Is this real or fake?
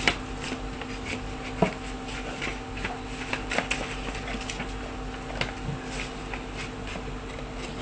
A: real